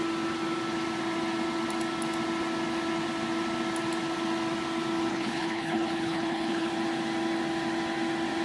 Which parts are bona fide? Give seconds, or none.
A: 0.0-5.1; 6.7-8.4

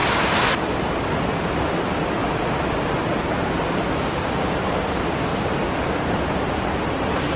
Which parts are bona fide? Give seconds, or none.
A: 0.0-7.4

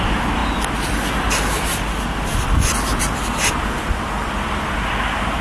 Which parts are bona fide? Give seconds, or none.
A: 0.0-5.4

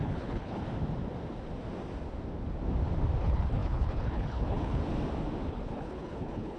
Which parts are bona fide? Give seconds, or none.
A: 0.6-3.2; 4.8-5.5